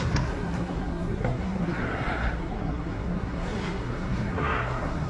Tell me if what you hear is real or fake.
fake